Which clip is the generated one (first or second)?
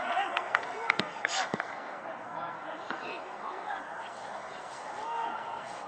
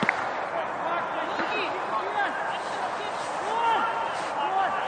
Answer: first